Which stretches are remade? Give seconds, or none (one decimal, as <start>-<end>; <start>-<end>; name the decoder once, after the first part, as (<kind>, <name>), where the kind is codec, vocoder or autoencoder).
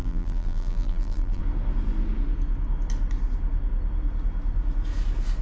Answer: 0.0-1.4 (vocoder, BigVGAN v2)